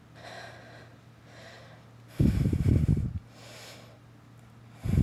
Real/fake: real